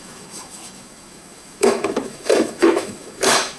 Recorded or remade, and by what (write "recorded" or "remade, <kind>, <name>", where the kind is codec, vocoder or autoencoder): remade, autoencoder, DAC-VAE